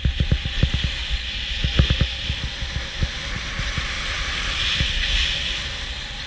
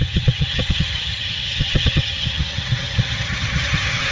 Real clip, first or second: first